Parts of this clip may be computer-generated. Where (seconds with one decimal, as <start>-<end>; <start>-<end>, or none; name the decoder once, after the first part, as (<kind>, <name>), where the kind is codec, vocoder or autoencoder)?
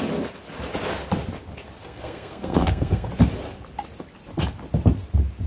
1.8-3.1 (codec, SNAC)